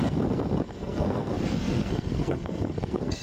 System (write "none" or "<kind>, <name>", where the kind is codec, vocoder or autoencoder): codec, SNAC